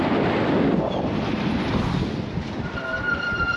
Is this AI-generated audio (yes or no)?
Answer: no